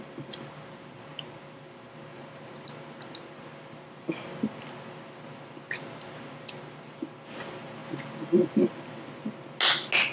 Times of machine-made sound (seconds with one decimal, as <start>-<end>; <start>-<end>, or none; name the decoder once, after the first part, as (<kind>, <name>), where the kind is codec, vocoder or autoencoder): 2.1-2.7 (vocoder, BigVGAN v2)